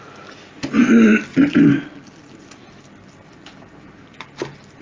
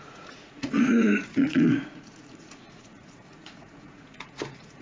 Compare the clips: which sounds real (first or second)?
first